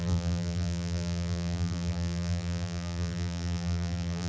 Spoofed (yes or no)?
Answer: yes